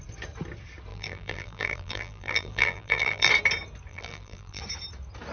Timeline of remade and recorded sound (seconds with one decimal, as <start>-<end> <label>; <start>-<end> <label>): 0.0-0.9 recorded; 0.9-3.3 remade; 3.3-3.9 recorded; 3.9-4.6 remade; 4.6-5.3 recorded